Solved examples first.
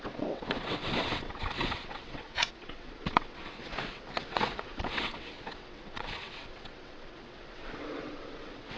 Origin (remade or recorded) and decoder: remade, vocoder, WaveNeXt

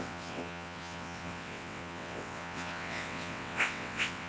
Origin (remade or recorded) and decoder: remade, vocoder, WaveNeXt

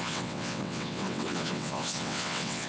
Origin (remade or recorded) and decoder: remade, vocoder, WaveNeXt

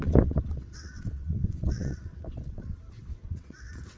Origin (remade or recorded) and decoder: remade, vocoder, WaveNeXt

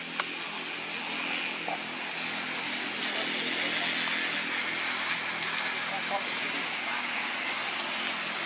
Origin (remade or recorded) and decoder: recorded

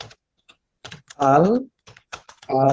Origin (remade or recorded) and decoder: remade, vocoder, WaveNeXt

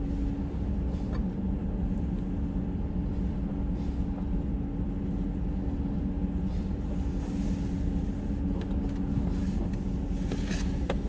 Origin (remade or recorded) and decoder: recorded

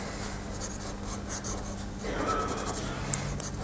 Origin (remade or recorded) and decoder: recorded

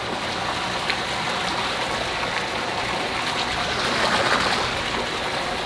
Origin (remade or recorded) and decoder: recorded